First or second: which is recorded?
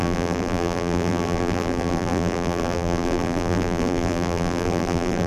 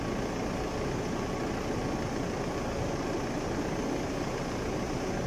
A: second